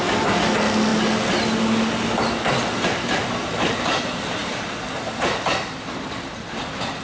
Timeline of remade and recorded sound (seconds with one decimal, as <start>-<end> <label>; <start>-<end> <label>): 0.0-7.0 recorded